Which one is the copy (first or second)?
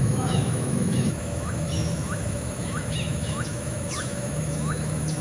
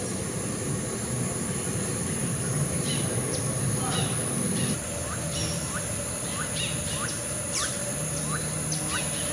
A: first